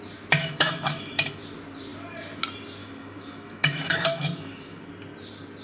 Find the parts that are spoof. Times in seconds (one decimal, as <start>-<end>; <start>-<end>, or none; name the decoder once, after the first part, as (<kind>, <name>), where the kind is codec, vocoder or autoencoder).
0.4-1.4 (autoencoder, DAC-VAE); 2.8-4.9